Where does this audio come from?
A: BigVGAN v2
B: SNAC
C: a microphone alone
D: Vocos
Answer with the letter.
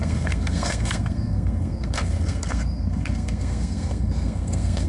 B